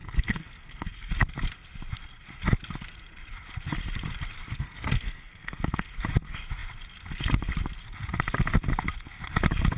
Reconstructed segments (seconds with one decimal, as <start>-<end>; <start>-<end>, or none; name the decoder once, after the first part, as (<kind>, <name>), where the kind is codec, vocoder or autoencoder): 0.0-1.1 (codec, SNAC); 4.5-5.9